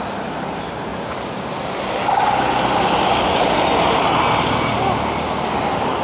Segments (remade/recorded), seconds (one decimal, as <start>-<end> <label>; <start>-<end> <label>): 0.0-6.0 recorded